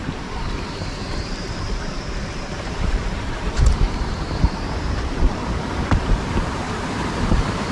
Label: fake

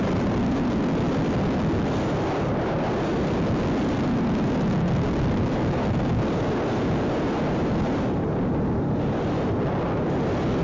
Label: fake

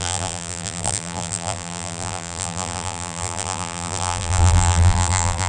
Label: fake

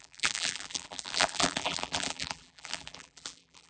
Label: fake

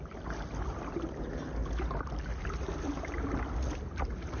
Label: real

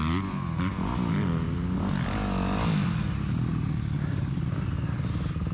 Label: real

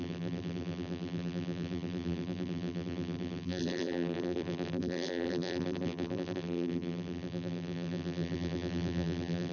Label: fake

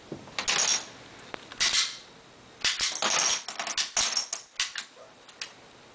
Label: real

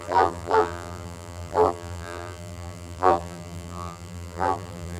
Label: fake